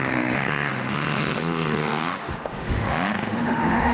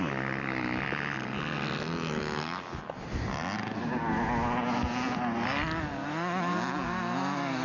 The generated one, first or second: first